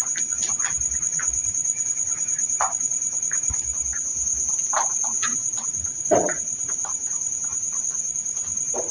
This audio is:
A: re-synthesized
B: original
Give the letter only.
A